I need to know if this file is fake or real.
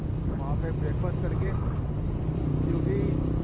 real